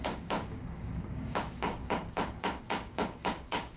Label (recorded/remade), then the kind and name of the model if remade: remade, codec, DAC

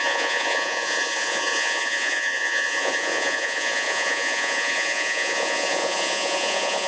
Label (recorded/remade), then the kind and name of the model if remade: remade, vocoder, Vocos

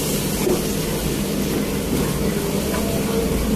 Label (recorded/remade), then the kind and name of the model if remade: recorded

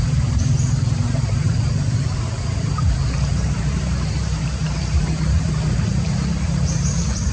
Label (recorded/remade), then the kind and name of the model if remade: remade, vocoder, BigVGAN v2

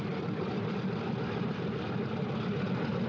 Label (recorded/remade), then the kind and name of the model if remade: recorded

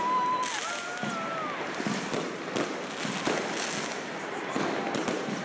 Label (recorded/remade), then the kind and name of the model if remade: recorded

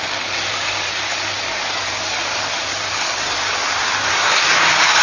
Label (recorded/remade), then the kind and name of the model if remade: remade, codec, DAC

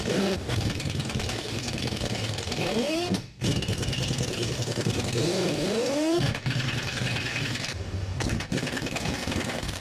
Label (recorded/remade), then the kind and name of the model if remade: remade, codec, DAC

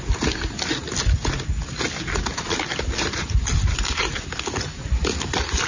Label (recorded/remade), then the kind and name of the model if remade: recorded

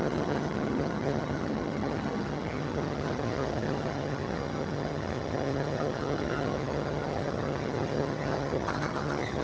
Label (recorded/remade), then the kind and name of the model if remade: remade, vocoder, HiFi-GAN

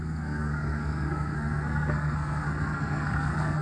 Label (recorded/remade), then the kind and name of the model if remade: remade, codec, SNAC